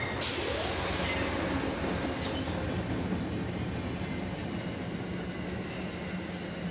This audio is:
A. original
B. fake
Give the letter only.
A